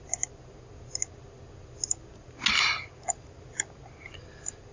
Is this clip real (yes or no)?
yes